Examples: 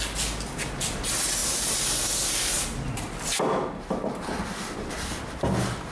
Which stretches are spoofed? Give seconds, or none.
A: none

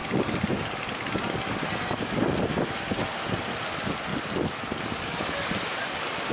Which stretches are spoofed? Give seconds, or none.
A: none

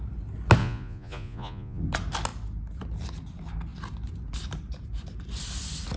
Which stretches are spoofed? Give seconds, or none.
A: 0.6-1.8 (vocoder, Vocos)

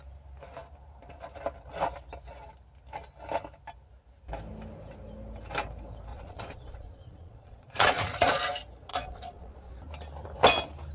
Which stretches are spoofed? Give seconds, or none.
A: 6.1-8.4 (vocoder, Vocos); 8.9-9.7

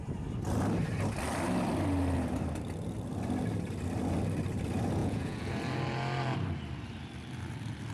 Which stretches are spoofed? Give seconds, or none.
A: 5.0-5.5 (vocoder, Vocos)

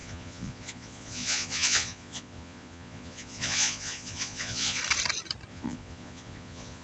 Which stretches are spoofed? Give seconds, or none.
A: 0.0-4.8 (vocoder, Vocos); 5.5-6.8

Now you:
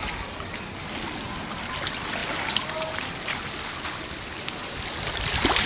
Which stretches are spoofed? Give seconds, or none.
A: none